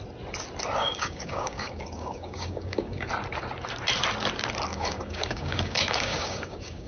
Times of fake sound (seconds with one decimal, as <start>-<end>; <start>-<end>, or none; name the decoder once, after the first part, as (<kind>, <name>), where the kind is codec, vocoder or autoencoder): 0.8-3.1 (codec, DAC); 4.7-6.9